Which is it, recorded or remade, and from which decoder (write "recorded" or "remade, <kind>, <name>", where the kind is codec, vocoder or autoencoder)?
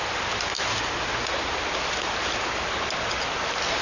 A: recorded